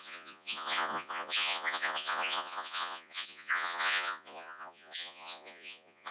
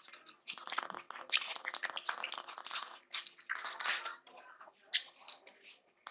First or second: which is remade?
first